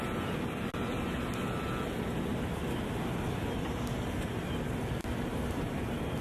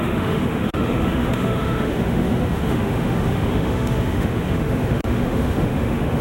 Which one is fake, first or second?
second